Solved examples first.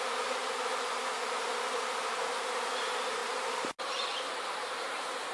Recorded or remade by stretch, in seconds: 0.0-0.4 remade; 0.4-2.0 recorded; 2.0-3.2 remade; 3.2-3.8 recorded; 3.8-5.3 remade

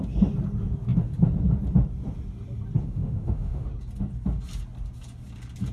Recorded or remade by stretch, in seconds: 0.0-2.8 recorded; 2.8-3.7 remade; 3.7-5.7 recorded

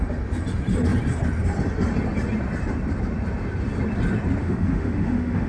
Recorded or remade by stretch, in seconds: 0.0-4.4 recorded; 4.4-5.5 remade

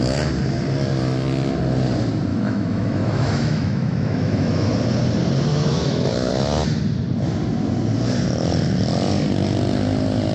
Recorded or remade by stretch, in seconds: 0.0-2.3 recorded; 2.3-4.7 remade; 4.7-5.5 recorded; 5.5-6.3 remade; 6.3-10.3 recorded